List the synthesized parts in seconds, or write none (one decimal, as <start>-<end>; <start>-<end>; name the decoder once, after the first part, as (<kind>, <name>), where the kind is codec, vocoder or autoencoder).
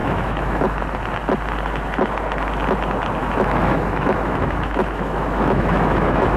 0.0-0.8 (autoencoder, DAC-VAE); 3.2-6.4